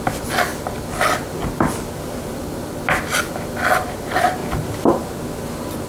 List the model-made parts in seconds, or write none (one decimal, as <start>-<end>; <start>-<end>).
none